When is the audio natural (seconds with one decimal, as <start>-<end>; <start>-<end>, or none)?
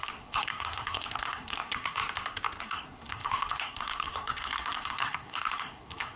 2.0-2.6